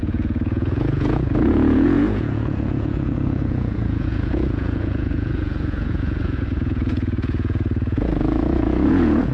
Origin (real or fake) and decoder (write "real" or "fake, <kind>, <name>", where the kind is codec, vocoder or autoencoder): fake, vocoder, Vocos